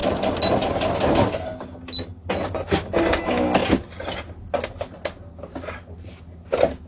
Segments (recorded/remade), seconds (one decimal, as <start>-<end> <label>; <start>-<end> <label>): 0.0-6.9 recorded